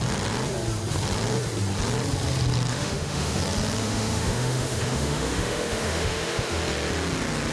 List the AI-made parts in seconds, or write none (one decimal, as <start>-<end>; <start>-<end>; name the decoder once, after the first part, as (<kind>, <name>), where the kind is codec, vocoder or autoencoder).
2.7-3.4 (autoencoder, DAC-VAE); 3.8-6.6